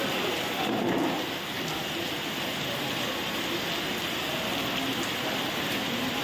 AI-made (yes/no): no